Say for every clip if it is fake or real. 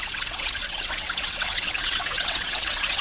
fake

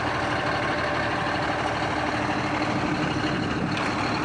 real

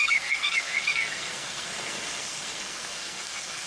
fake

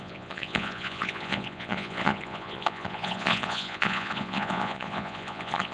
fake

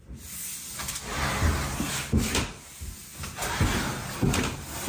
real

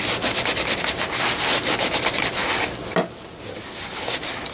real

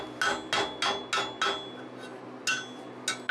real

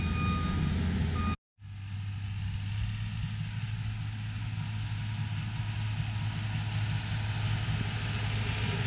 real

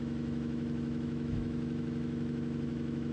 fake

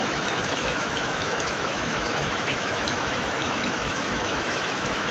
fake